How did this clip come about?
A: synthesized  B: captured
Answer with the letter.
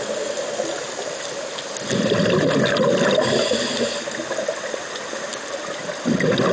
B